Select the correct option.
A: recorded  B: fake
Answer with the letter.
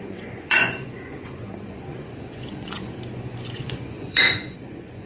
B